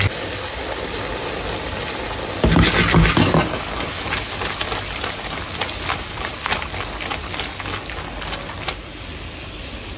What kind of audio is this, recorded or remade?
recorded